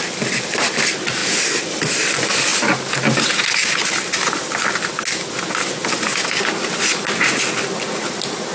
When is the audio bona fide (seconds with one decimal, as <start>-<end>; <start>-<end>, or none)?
0.0-8.5